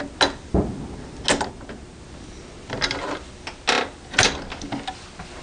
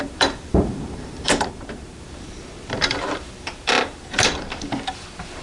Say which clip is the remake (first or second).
second